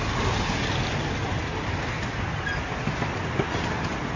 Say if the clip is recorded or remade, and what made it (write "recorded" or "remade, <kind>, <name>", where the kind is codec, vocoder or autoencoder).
recorded